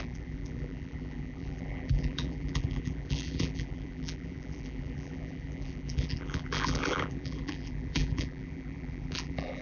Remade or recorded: remade